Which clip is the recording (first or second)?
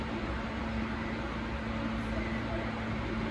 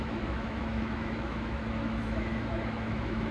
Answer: first